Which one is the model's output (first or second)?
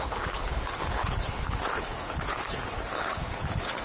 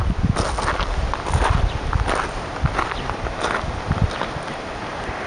first